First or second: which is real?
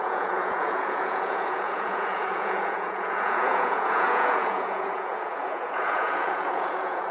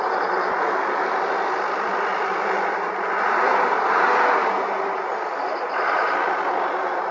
second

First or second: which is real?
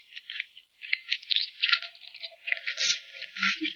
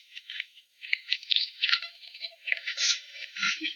first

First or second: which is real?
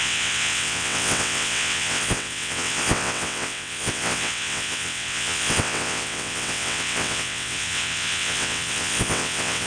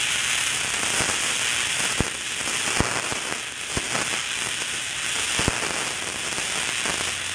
second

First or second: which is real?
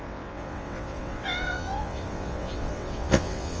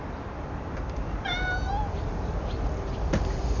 second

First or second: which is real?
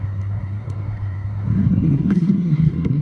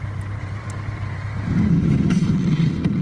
second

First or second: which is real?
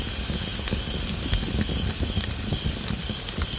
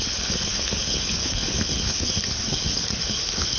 first